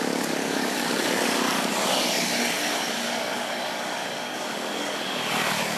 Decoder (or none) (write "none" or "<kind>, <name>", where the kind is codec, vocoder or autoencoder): codec, DAC